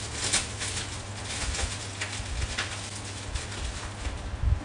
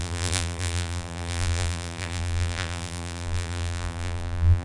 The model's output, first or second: second